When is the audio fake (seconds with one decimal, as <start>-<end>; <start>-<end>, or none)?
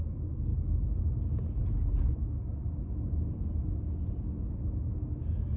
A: none